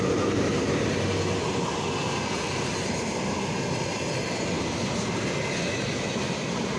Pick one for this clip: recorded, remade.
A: recorded